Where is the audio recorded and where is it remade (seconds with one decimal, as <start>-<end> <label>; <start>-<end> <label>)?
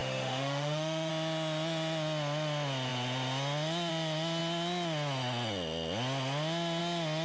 0.0-1.1 remade; 1.1-7.2 recorded